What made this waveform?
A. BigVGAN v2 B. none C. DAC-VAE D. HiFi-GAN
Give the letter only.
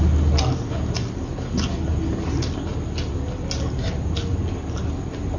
B